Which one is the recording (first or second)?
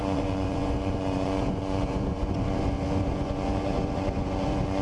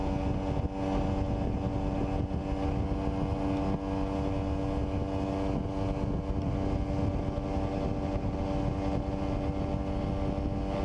second